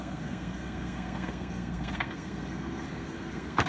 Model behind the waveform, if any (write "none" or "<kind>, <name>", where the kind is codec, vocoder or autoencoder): codec, SNAC